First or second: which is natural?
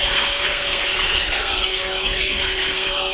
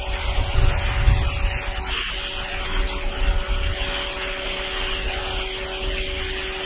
second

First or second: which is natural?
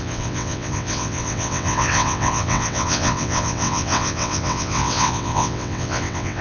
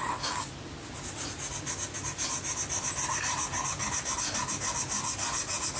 second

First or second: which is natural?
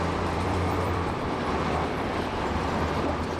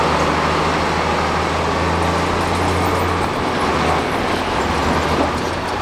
second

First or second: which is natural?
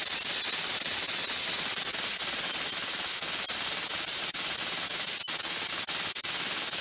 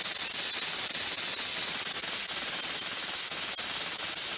second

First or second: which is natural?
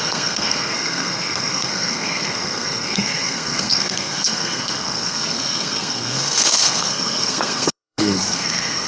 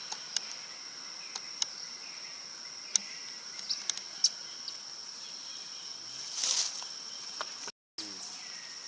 second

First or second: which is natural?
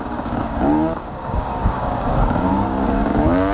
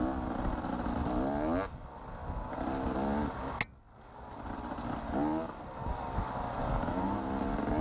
second